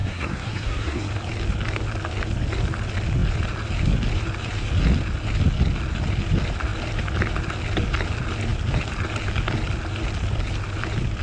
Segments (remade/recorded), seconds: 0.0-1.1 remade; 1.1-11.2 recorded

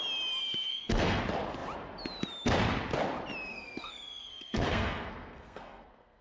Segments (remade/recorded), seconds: 0.0-0.7 recorded; 0.7-1.2 remade; 1.2-3.5 recorded; 3.5-6.2 remade

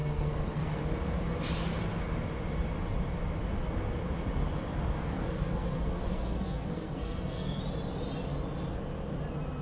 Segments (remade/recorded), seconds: 0.0-0.8 remade; 0.8-5.0 recorded; 5.0-7.6 remade; 7.6-9.6 recorded

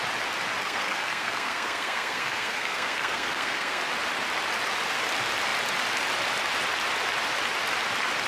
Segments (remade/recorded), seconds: 0.0-0.6 recorded; 0.6-3.8 remade; 3.8-8.3 recorded